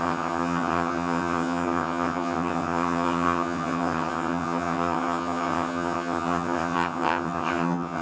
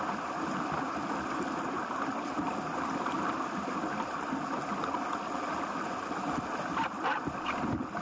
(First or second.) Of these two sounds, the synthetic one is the first